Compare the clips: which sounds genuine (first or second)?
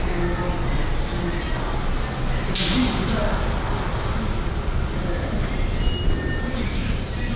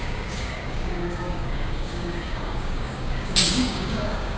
first